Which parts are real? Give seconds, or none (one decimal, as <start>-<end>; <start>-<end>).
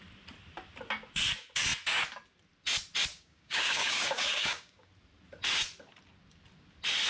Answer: 0.0-3.1; 4.9-7.1